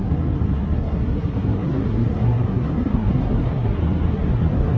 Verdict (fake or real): fake